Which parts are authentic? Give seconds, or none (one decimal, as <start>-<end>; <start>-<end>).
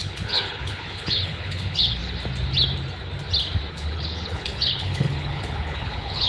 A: 2.0-3.7